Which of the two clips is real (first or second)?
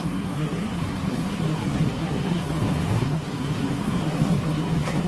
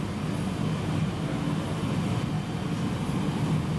second